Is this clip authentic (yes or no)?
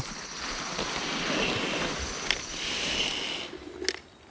yes